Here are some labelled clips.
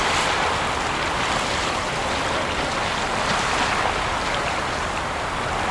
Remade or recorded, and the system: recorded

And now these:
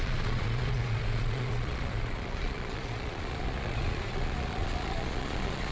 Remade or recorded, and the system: remade, vocoder, Vocos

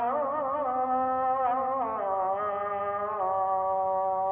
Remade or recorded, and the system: recorded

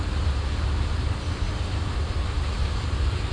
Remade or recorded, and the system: recorded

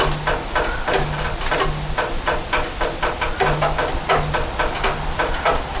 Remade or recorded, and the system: recorded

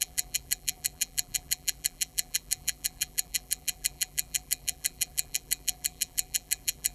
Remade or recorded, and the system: remade, vocoder, BigVGAN v2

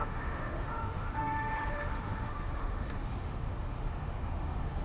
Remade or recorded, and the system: remade, autoencoder, DAC-VAE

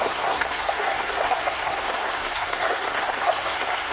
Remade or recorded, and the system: remade, codec, SNAC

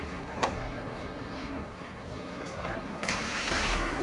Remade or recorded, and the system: remade, codec, SNAC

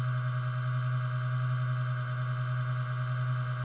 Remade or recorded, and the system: recorded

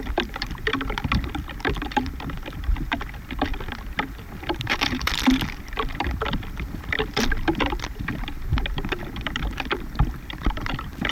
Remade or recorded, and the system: remade, vocoder, BigVGAN v2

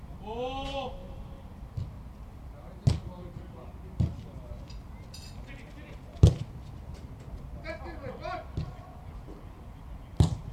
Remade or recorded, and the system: recorded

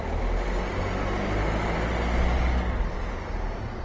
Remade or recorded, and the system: recorded